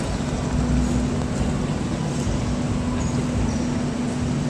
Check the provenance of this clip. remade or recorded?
recorded